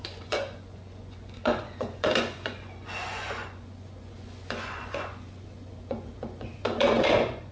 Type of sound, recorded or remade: remade